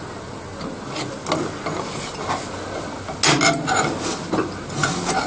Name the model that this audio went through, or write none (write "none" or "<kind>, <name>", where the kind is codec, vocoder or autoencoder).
none